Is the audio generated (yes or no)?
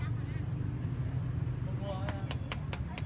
no